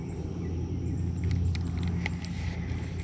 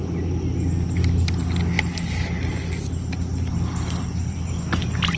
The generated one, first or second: first